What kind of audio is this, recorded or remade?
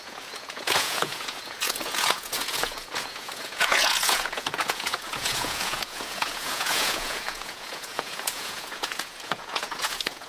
remade